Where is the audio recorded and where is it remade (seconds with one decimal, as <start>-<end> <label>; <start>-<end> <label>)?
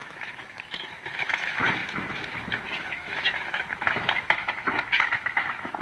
0.0-5.8 remade